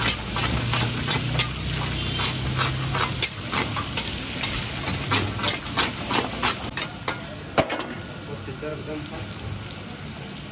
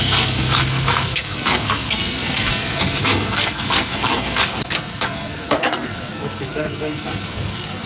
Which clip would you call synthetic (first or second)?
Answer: second